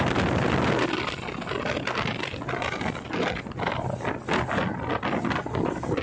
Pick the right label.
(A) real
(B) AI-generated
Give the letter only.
A